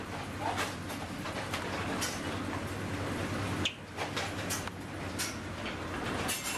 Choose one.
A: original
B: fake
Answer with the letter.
A